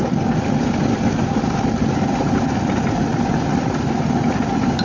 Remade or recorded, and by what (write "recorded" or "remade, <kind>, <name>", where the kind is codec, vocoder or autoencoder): recorded